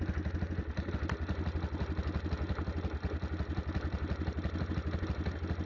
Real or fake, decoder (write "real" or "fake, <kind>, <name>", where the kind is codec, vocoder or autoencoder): real